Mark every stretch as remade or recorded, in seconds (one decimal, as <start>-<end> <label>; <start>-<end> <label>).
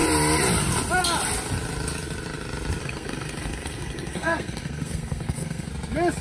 0.0-2.8 recorded; 2.8-5.7 remade; 5.7-6.2 recorded